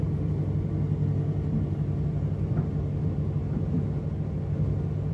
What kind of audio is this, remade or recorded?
recorded